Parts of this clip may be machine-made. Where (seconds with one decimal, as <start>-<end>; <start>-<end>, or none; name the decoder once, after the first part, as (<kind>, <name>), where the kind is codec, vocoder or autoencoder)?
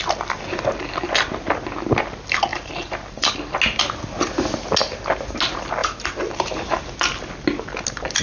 2.5-3.3 (vocoder, BigVGAN v2); 5.8-6.8